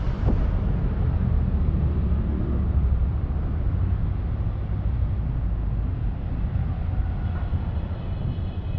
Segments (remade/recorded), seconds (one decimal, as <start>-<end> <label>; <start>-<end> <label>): 0.0-8.8 recorded